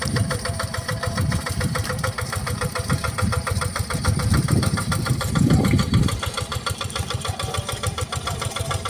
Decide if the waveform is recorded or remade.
remade